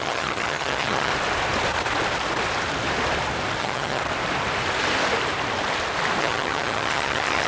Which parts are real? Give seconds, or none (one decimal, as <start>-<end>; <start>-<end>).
1.1-3.6; 4.0-6.2